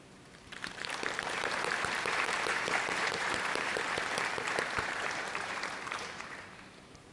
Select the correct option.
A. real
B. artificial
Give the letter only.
B